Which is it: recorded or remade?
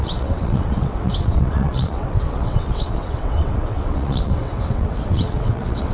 remade